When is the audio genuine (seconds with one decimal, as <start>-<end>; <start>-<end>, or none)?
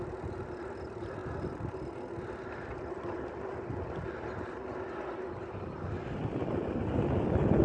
0.0-7.6